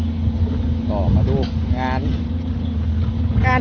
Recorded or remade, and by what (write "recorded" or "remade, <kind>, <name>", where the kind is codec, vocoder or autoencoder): recorded